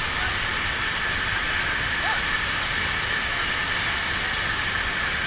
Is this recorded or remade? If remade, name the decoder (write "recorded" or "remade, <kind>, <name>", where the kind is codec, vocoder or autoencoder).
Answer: recorded